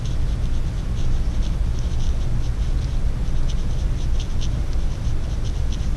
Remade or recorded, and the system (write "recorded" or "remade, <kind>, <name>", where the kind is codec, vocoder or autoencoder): recorded